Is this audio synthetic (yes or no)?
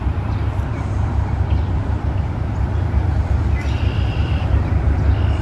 yes